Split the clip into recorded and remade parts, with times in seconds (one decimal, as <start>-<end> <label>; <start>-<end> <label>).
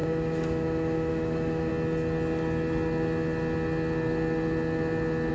0.0-1.7 remade; 1.7-5.3 recorded